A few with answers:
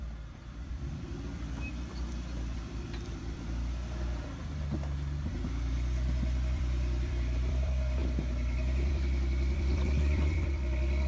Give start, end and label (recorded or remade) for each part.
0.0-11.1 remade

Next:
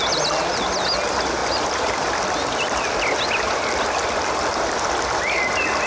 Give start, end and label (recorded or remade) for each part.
0.0-1.4 recorded; 1.4-4.9 remade; 4.9-5.9 recorded

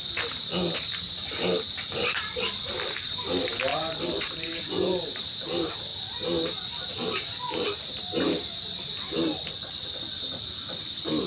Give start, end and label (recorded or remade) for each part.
0.0-3.7 recorded; 3.7-5.2 remade; 5.2-11.3 recorded

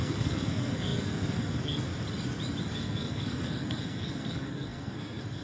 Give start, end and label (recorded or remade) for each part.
0.0-1.9 remade; 1.9-2.6 recorded; 2.6-5.4 remade

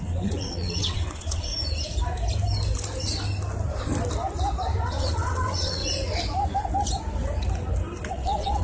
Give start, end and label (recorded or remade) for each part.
0.0-1.5 remade; 1.5-4.8 recorded; 4.8-5.8 remade; 5.8-8.1 recorded; 8.1-8.6 remade

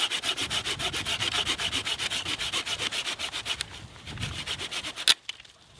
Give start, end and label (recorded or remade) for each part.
0.0-5.8 recorded

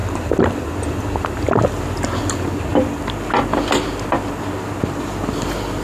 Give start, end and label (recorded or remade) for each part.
0.0-5.8 recorded